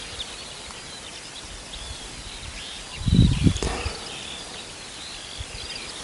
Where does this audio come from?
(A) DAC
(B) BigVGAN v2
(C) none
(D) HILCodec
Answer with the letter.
C